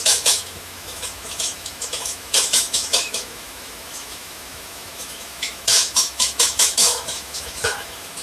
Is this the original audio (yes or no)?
no